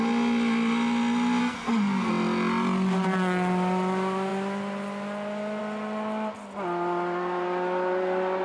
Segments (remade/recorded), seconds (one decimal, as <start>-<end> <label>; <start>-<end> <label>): 0.0-1.4 recorded; 1.4-2.1 remade; 2.1-8.4 recorded